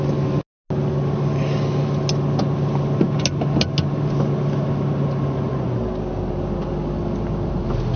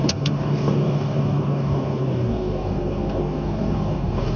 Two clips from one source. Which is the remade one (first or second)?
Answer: second